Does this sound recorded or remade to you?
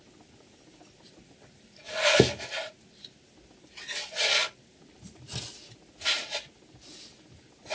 recorded